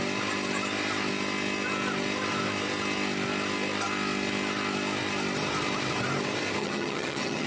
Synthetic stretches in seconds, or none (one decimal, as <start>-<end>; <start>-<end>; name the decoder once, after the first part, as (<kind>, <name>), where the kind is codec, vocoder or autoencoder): 6.6-7.5 (vocoder, HiFi-GAN)